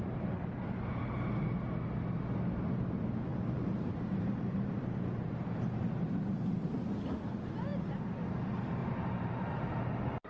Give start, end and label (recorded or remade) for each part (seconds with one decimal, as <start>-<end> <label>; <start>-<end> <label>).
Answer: 0.0-3.3 recorded; 3.3-4.8 remade; 4.8-8.8 recorded; 8.8-9.4 remade; 9.4-10.3 recorded